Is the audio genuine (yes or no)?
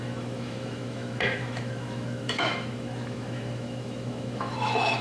no